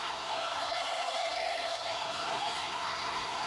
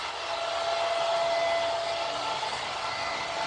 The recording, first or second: second